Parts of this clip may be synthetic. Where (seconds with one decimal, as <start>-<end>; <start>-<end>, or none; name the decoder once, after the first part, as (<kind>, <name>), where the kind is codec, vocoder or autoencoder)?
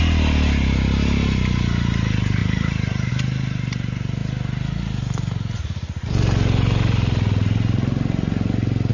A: 2.4-3.1 (vocoder, BigVGAN v2)